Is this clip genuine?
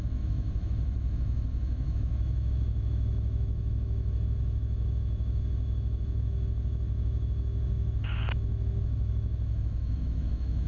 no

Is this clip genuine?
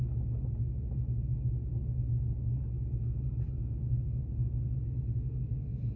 yes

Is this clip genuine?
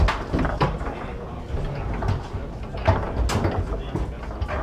yes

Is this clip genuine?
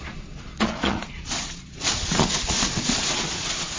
no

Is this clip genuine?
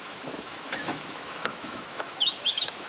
no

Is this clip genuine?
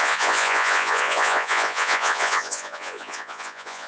no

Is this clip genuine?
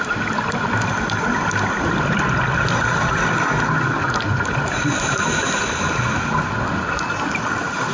yes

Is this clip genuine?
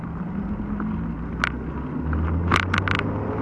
yes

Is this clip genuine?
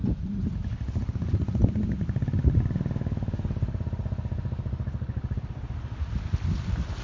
yes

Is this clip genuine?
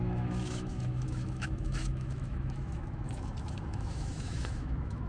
no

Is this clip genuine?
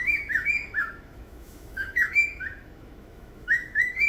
no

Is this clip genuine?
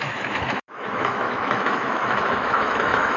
no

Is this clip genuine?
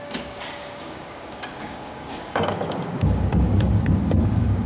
no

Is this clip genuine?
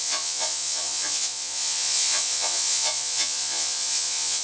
no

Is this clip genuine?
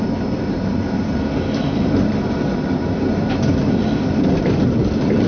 yes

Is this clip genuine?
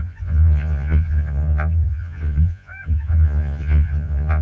no